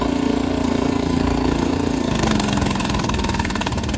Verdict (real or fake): fake